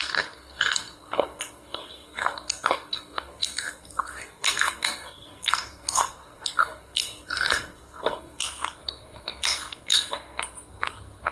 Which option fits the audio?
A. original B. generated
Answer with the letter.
B